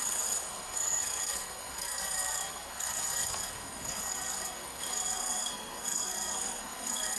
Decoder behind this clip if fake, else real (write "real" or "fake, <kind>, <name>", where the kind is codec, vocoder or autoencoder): fake, codec, SNAC